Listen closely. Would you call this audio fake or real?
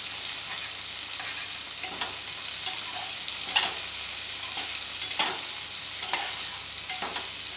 real